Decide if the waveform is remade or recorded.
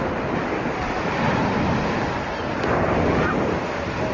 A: recorded